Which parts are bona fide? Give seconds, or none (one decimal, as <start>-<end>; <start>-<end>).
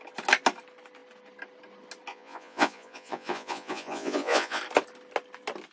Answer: 0.0-2.1; 4.6-5.7